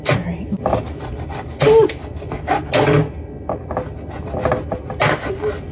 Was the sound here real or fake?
real